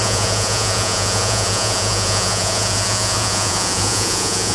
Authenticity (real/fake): fake